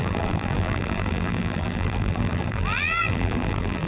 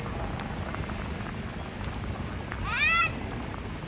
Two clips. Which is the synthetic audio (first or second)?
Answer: first